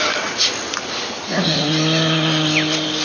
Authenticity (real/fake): real